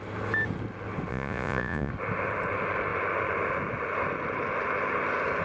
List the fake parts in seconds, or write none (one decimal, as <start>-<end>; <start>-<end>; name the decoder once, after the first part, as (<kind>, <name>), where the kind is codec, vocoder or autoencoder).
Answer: 1.1-1.9 (vocoder, Vocos)